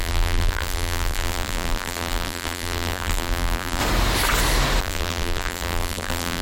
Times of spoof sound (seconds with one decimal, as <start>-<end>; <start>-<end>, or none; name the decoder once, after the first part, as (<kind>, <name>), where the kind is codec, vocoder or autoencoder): 0.0-3.8 (vocoder, BigVGAN v2); 4.8-6.4